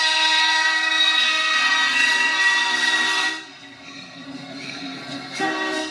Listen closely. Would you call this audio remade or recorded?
remade